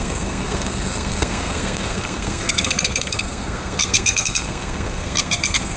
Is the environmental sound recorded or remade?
remade